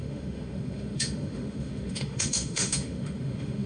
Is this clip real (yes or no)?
no